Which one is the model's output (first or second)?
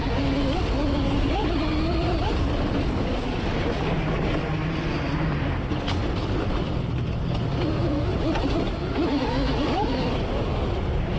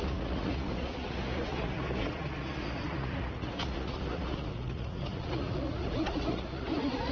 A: second